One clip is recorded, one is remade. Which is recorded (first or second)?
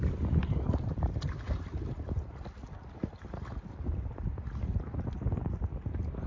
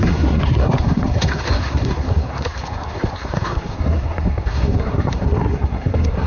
first